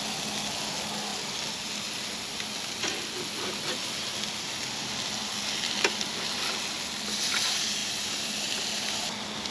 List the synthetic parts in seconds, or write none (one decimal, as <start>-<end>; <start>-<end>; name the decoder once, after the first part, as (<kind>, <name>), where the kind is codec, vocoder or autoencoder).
none